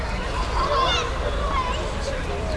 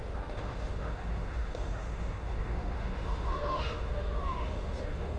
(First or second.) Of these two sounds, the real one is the first